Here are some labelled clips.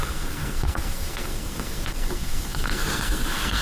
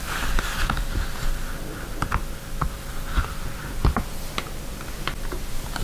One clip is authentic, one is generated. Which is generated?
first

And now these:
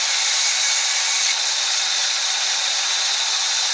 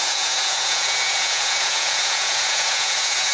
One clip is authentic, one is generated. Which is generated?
second